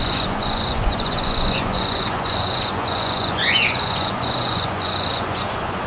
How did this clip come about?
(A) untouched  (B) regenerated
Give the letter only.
B